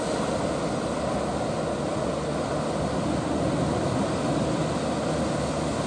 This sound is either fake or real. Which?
real